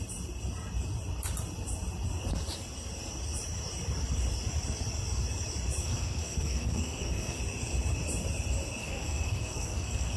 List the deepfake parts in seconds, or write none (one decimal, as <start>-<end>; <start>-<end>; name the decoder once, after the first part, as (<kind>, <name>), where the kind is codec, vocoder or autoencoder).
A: 5.8-7.4 (codec, SNAC); 8.8-10.2